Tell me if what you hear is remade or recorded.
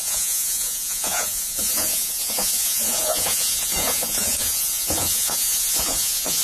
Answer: remade